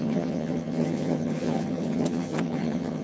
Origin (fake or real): fake